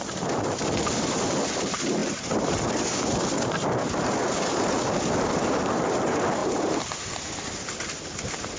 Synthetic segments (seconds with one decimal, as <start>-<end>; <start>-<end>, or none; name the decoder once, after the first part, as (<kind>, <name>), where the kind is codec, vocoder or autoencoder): 6.4-7.0 (vocoder, BigVGAN v2)